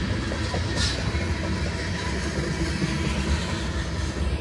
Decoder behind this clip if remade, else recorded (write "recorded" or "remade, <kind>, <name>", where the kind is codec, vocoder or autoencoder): recorded